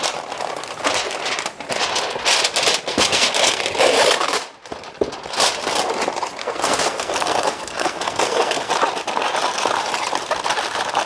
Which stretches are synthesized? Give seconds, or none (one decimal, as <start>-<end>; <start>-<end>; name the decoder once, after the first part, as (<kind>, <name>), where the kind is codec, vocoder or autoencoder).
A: 2.9-3.6 (codec, SNAC); 6.4-8.7